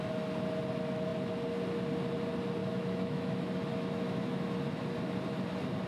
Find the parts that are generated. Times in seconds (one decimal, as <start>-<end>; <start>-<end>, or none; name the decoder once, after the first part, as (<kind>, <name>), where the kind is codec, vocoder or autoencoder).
2.6-3.3 (autoencoder, DAC-VAE); 3.7-4.5